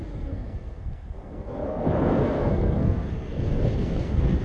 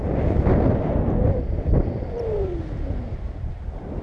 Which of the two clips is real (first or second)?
second